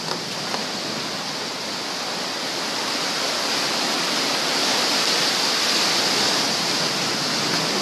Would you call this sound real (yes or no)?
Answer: yes